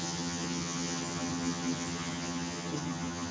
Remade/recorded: remade